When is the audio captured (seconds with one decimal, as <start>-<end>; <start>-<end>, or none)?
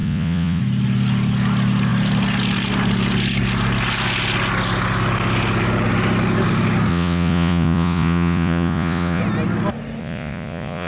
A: 0.6-6.9; 9.2-10.0